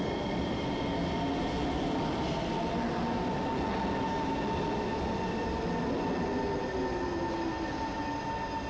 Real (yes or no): yes